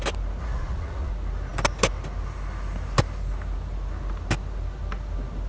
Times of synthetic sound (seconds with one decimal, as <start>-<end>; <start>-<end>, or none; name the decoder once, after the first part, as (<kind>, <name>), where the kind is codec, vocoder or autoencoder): 0.4-1.1 (vocoder, Vocos)